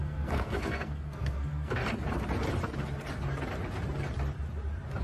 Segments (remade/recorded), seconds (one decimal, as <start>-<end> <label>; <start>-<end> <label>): 0.0-1.8 remade; 1.8-5.0 recorded